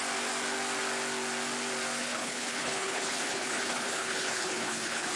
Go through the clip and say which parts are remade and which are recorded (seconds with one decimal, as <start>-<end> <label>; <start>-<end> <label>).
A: 0.0-2.0 recorded; 2.0-5.2 remade